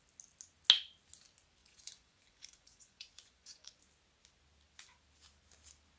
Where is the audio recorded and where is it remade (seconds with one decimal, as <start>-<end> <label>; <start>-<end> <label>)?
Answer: 0.0-1.6 recorded; 1.6-3.8 remade; 3.8-6.0 recorded